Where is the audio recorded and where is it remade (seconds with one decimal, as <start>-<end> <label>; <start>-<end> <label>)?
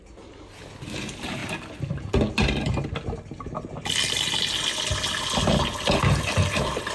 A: 0.0-6.9 recorded